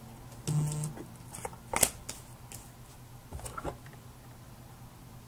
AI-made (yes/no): no